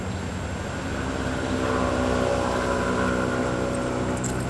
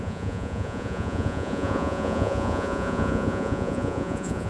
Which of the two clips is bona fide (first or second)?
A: first